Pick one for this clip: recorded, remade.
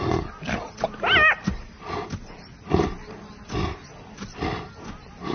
recorded